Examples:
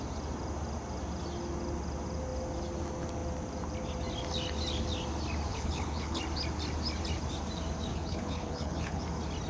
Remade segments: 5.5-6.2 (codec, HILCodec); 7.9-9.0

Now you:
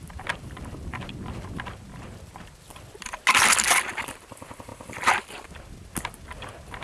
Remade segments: none

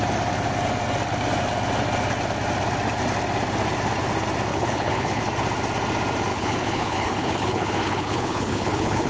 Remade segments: 4.5-5.2 (codec, HILCodec); 6.3-9.1

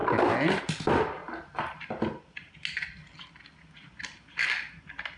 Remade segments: none

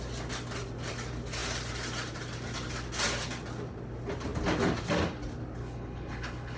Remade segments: 5.6-6.6 (codec, HILCodec)